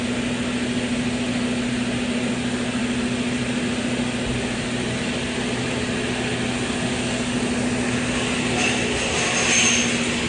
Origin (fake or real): real